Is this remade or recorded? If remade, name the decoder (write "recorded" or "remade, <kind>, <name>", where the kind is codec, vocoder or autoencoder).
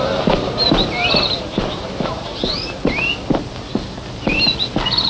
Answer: recorded